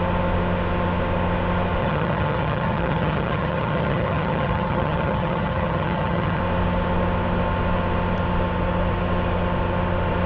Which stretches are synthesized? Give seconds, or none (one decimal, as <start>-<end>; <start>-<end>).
1.8-6.4